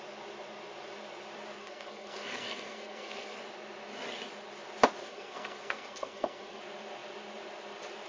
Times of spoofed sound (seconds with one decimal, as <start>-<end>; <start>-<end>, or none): 1.6-3.4; 5.0-6.6